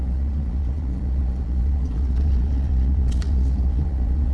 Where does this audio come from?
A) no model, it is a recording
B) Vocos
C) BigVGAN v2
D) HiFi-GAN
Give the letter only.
B